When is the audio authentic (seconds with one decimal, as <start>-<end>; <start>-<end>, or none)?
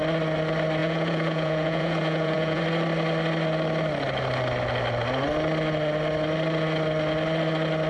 0.0-0.8; 2.6-7.9